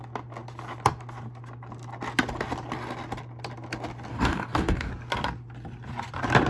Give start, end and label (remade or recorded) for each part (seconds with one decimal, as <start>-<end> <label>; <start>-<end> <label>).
0.0-4.1 recorded; 4.1-4.9 remade; 4.9-6.5 recorded